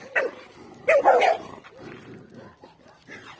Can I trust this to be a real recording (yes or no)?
yes